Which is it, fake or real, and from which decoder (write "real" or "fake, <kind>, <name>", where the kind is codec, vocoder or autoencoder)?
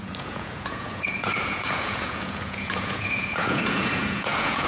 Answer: fake, vocoder, Vocos